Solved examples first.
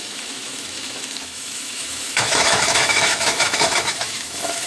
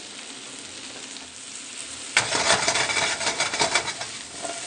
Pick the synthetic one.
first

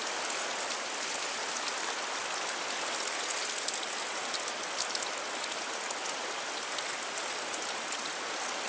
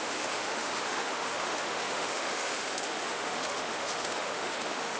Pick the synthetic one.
second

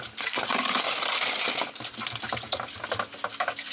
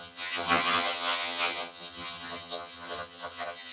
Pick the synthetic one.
second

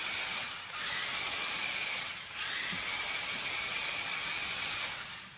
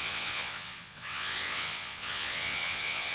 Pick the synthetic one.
second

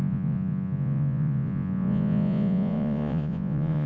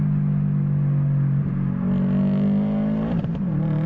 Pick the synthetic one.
first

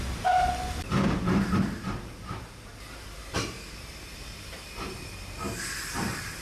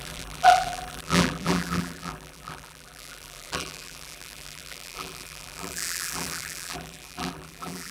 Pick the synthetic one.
second